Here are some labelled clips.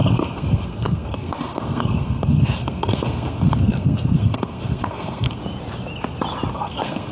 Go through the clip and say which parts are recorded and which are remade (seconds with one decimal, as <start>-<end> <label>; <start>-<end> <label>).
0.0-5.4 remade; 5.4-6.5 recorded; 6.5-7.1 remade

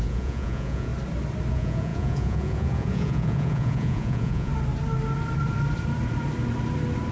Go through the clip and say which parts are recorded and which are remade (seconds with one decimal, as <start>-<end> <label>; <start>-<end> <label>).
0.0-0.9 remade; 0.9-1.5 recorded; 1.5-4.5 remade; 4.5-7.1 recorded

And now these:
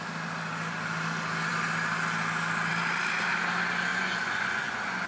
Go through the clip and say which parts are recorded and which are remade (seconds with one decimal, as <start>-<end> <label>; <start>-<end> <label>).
0.0-3.9 recorded; 3.9-5.1 remade

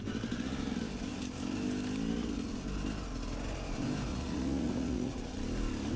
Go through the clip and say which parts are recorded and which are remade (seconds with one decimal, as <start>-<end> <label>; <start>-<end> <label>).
0.0-4.1 recorded; 4.1-5.3 remade; 5.3-6.0 recorded